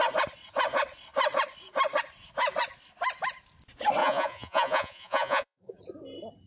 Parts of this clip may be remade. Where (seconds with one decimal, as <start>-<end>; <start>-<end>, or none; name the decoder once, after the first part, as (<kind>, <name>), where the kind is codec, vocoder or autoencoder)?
4.0-5.8 (vocoder, Vocos)